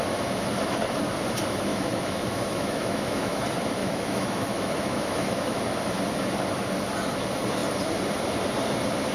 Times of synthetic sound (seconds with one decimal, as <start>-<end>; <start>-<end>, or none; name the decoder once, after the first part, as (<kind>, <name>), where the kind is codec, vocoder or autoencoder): 1.7-3.4 (autoencoder, DAC-VAE); 3.8-5.6